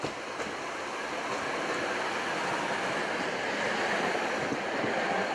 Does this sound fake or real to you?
real